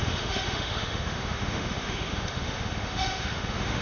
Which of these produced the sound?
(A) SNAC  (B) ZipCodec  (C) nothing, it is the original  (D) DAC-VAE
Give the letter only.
D